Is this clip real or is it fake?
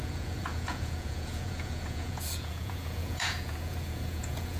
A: fake